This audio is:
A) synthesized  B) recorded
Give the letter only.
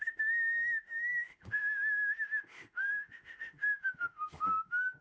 A